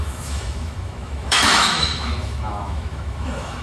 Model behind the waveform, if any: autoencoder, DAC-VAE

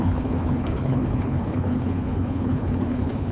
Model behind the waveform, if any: codec, HILCodec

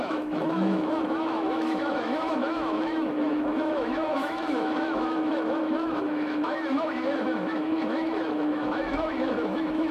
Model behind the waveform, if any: autoencoder, DAC-VAE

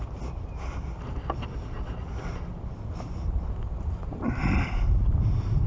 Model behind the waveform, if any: none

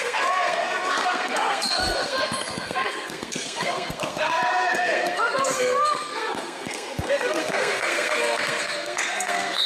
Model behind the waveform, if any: codec, SNAC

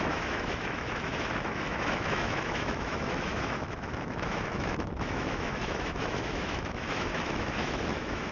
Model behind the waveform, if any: autoencoder, DAC-VAE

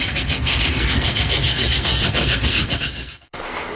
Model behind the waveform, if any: codec, SNAC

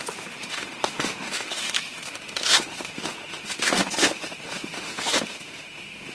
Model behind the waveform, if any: autoencoder, DAC-VAE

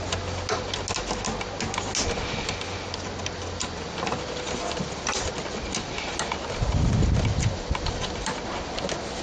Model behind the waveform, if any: none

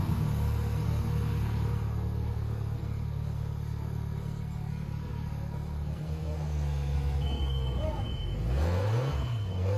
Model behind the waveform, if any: codec, SNAC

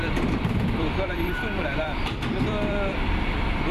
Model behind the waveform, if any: vocoder, BigVGAN v2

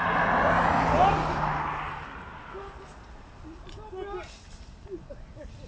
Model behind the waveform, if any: none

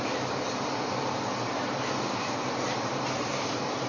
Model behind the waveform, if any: vocoder, BigVGAN v2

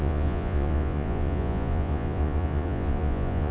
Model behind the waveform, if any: vocoder, Vocos